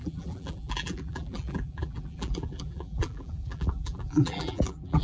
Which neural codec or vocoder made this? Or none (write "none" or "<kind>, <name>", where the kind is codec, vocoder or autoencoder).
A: vocoder, BigVGAN v2